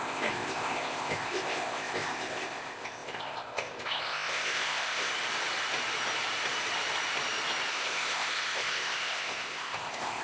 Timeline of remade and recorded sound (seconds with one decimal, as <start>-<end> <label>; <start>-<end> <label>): 0.0-5.1 remade; 5.1-7.7 recorded; 7.7-10.2 remade